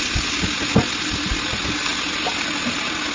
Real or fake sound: real